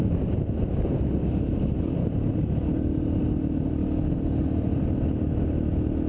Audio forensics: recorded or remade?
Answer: recorded